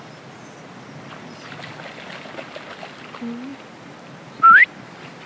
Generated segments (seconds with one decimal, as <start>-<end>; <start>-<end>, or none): none